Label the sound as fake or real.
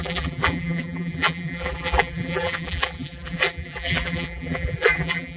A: fake